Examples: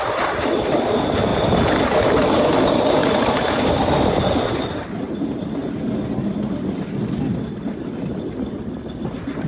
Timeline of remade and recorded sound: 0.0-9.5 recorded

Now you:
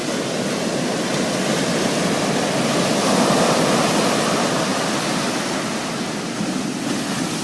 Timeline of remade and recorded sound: 0.0-3.7 remade; 3.7-4.7 recorded; 4.7-5.8 remade; 5.8-7.4 recorded

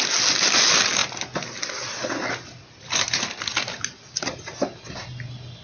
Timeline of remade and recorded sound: 0.0-5.6 recorded

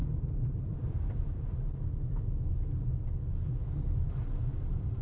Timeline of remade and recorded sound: 0.0-2.5 remade; 2.5-3.3 recorded; 3.3-4.3 remade; 4.3-5.0 recorded

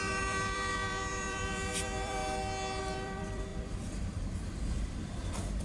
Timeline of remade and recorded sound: 0.0-2.2 remade; 2.2-2.8 recorded; 2.8-5.6 remade